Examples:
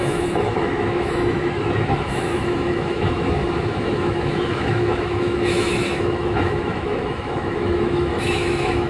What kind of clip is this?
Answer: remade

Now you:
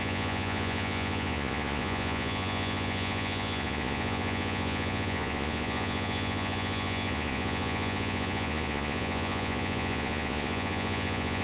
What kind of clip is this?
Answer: remade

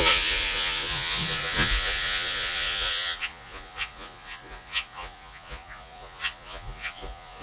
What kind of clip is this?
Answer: remade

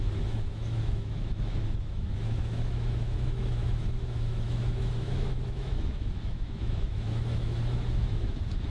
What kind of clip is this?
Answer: remade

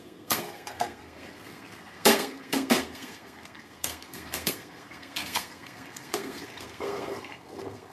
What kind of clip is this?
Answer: remade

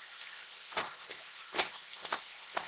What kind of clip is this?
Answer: remade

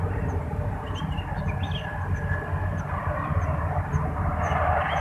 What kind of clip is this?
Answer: recorded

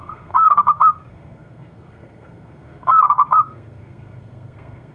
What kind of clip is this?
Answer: remade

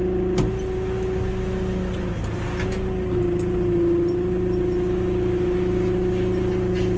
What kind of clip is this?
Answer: recorded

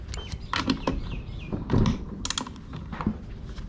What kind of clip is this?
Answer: recorded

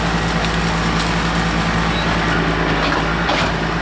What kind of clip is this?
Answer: recorded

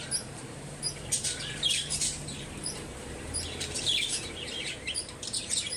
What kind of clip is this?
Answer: remade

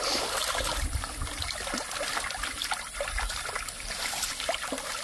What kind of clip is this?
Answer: recorded